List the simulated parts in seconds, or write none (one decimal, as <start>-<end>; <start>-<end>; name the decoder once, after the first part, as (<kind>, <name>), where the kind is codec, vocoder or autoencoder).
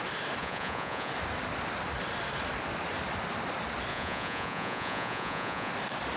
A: 0.4-1.1 (vocoder, Vocos); 3.9-5.7